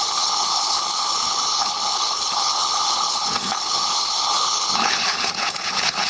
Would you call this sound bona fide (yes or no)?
no